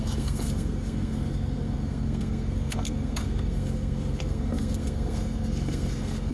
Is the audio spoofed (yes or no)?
yes